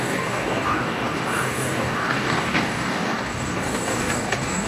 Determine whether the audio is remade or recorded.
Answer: remade